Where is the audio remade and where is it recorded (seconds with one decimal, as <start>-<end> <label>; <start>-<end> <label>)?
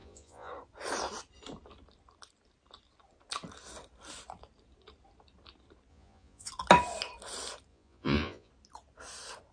0.0-0.5 remade; 0.5-5.9 recorded; 5.9-6.5 remade; 6.5-7.7 recorded; 7.7-8.5 remade; 8.5-9.5 recorded